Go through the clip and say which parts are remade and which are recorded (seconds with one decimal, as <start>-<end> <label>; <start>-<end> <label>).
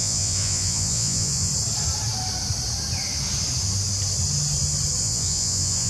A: 0.0-1.5 remade; 1.5-5.0 recorded; 5.0-5.9 remade